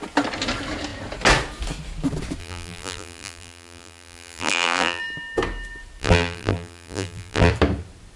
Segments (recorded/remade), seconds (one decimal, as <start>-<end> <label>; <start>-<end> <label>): 0.0-2.4 recorded; 2.4-5.0 remade; 5.0-6.0 recorded; 6.0-7.5 remade; 7.5-8.2 recorded